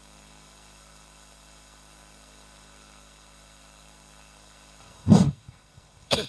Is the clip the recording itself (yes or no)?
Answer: no